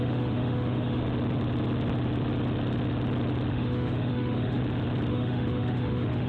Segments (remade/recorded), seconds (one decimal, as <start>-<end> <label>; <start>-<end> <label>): 0.0-1.0 remade; 1.0-3.5 recorded; 3.5-4.6 remade; 4.6-5.1 recorded; 5.1-6.3 remade